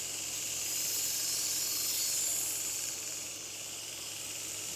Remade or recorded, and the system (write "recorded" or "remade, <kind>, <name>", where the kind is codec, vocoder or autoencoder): recorded